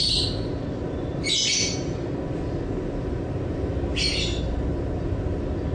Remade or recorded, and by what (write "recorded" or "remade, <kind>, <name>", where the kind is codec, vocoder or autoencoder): recorded